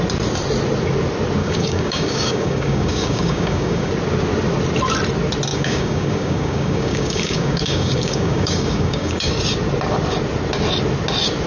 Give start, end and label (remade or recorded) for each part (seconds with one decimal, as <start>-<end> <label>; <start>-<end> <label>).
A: 0.0-1.4 recorded; 1.4-3.9 remade; 3.9-5.5 recorded; 5.5-9.3 remade; 9.3-11.5 recorded